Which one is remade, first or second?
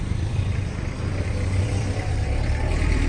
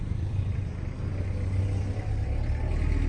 first